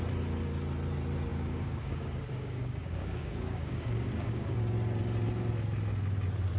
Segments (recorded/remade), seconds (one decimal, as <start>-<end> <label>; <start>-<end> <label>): 0.0-1.3 recorded; 1.3-4.6 remade; 4.6-6.6 recorded